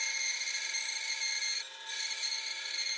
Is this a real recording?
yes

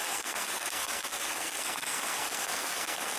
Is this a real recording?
no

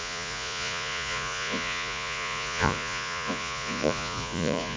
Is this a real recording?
no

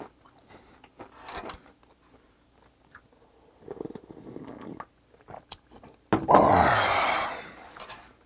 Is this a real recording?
yes